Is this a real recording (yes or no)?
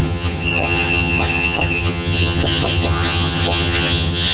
no